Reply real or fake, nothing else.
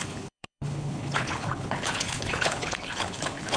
fake